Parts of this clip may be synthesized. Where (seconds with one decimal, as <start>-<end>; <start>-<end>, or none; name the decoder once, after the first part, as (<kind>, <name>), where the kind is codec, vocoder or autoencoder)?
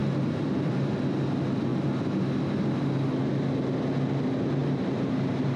0.0-0.7 (vocoder, BigVGAN v2); 4.6-5.6